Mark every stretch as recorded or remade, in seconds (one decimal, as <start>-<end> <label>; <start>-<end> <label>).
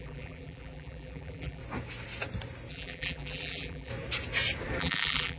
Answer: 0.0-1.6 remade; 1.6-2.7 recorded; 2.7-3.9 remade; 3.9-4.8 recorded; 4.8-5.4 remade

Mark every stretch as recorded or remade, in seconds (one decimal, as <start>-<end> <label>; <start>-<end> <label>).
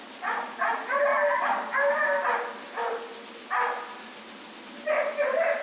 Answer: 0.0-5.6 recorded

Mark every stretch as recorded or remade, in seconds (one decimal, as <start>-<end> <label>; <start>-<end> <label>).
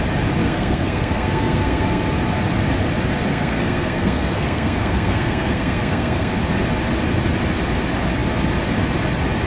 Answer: 0.0-0.4 recorded; 0.4-2.0 remade; 2.0-3.3 recorded; 3.3-6.3 remade; 6.3-9.5 recorded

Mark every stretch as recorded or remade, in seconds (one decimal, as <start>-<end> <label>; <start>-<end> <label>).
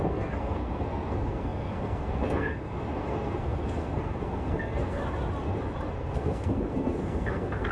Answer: 0.0-5.0 remade; 5.0-6.0 recorded; 6.0-7.7 remade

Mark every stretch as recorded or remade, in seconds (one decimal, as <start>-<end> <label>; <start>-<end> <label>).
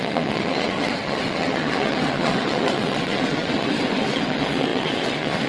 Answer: 0.0-5.5 remade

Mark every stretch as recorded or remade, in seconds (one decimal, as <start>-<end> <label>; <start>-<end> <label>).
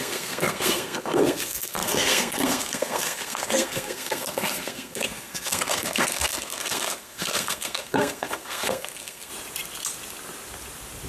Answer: 0.0-9.3 remade; 9.3-11.1 recorded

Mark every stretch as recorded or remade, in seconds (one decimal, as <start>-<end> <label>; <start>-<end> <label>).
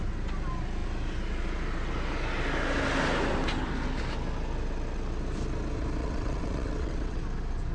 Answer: 0.0-6.0 recorded; 6.0-7.2 remade; 7.2-7.7 recorded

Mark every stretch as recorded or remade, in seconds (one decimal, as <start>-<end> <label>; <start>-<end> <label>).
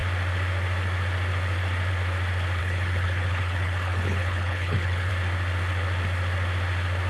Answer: 0.0-2.6 recorded; 2.6-5.1 remade; 5.1-7.1 recorded